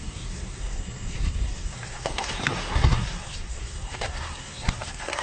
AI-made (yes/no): yes